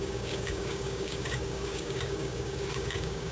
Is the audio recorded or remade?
remade